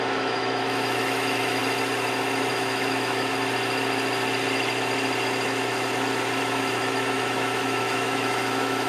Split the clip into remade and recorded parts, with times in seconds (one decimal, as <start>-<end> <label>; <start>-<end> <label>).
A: 0.0-1.6 remade; 1.6-2.5 recorded; 2.5-3.3 remade; 3.3-6.4 recorded; 6.4-8.9 remade